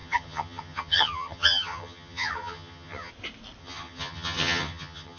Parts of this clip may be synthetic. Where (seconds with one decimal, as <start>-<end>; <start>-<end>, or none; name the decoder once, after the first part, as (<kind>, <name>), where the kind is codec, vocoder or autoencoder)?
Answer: 0.0-3.1 (vocoder, HiFi-GAN); 3.6-5.2